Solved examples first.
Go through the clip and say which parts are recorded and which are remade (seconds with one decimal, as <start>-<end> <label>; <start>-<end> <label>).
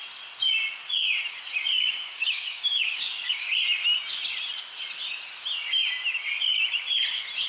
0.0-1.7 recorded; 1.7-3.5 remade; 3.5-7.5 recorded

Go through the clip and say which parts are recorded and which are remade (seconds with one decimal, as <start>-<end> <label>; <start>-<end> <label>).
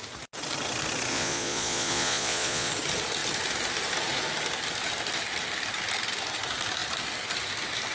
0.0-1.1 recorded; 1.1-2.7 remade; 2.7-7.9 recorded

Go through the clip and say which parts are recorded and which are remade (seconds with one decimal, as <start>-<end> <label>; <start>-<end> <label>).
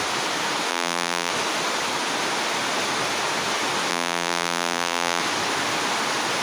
0.0-0.7 recorded; 0.7-1.3 remade; 1.3-3.9 recorded; 3.9-5.2 remade; 5.2-6.4 recorded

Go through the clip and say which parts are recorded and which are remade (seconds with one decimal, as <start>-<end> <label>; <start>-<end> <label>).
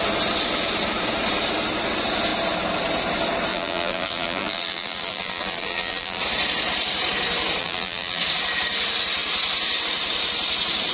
0.0-3.5 recorded; 3.5-6.2 remade; 6.2-7.6 recorded; 7.6-8.2 remade; 8.2-10.9 recorded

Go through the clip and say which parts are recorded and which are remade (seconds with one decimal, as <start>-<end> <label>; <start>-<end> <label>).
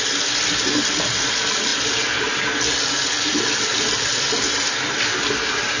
0.0-5.8 recorded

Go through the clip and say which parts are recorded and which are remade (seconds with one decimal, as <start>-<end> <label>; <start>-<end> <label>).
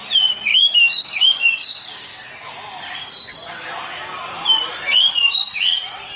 0.0-0.5 recorded; 0.5-2.3 remade; 2.3-6.2 recorded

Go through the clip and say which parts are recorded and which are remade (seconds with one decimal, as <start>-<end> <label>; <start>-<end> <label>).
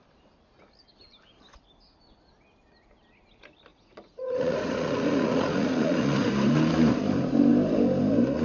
0.0-3.7 recorded; 3.7-6.3 remade; 6.3-8.4 recorded